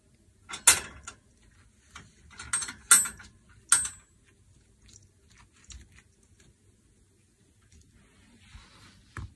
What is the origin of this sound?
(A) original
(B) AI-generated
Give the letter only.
A